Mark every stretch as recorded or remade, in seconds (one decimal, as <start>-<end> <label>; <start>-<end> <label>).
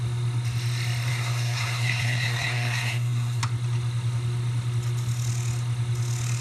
0.0-1.1 recorded; 1.1-3.4 remade; 3.4-6.4 recorded